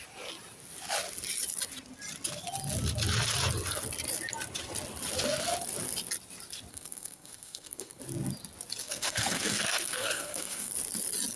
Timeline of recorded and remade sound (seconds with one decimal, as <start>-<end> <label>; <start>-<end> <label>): 0.0-6.7 recorded; 6.7-8.0 remade; 8.0-8.8 recorded; 8.8-10.7 remade; 10.7-11.4 recorded